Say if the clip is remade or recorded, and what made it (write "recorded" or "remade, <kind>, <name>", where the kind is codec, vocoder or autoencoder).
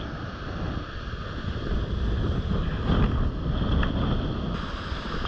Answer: recorded